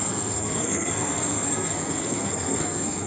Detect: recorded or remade remade